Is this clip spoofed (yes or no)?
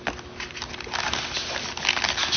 no